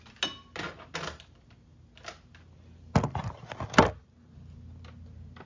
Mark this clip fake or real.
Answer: real